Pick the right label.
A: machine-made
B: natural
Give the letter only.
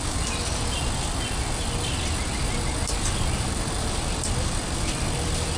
B